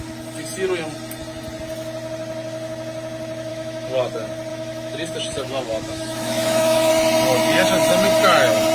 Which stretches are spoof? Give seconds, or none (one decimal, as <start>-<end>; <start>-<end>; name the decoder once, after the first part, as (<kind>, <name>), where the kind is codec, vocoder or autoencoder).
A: 3.5-4.1 (autoencoder, DAC-VAE); 4.5-6.9